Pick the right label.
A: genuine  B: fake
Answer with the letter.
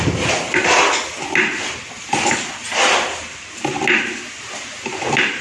A